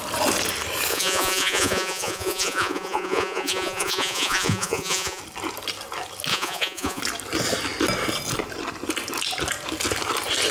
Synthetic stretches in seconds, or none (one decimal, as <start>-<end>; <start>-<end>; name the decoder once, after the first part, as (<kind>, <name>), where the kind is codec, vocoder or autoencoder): 0.9-5.2 (vocoder, Vocos); 6.3-7.0